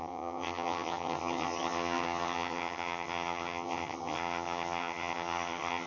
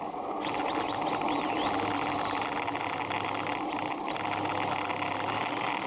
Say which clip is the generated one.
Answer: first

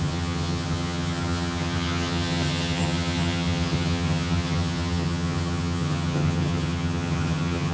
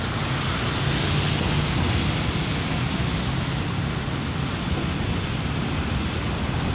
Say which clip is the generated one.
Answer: first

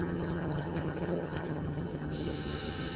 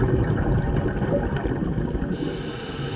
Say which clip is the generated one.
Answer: first